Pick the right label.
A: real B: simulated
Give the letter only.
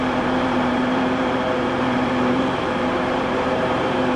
B